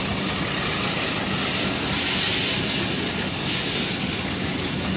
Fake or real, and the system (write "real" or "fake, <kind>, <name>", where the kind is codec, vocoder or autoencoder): real